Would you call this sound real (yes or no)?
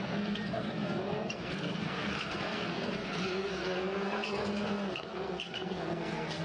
no